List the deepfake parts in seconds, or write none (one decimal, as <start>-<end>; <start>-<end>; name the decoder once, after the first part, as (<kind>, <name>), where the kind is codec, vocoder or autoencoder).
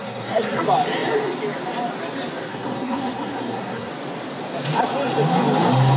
0.0-0.6 (codec, SNAC); 2.5-3.9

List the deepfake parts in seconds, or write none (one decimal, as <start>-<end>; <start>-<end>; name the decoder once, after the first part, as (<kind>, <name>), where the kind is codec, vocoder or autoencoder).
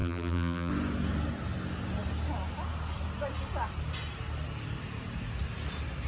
0.0-0.7 (vocoder, BigVGAN v2)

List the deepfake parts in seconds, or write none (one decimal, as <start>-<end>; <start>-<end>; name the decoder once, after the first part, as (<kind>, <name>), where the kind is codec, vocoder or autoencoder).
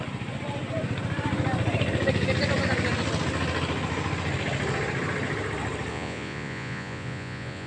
5.9-7.7 (vocoder, Vocos)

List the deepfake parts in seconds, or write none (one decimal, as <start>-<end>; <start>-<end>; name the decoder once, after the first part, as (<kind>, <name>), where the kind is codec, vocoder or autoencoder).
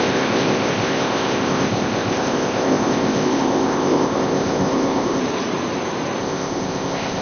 0.0-5.2 (codec, ZipCodec); 6.2-7.2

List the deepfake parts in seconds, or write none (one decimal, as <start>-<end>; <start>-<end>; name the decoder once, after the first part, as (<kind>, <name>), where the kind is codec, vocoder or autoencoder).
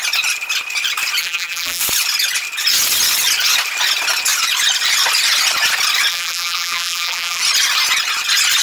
1.2-1.8 (vocoder, BigVGAN v2); 6.1-7.4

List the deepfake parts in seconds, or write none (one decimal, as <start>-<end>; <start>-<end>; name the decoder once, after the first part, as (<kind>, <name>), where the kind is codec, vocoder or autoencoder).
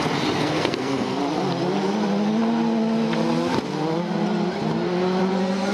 0.4-1.2 (codec, SNAC)